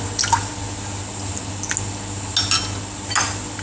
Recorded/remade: recorded